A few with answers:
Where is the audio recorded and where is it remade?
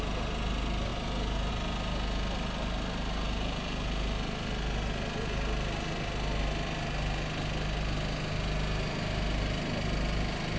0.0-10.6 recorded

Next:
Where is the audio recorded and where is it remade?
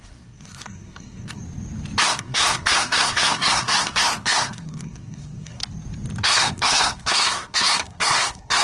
0.0-1.4 remade; 1.4-2.0 recorded; 2.0-5.6 remade; 5.6-6.2 recorded; 6.2-8.6 remade